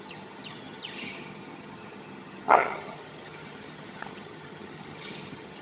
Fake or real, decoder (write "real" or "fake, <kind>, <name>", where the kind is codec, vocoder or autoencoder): fake, vocoder, HiFi-GAN